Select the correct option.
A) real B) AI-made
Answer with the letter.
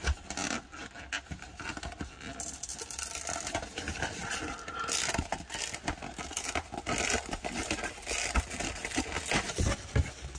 A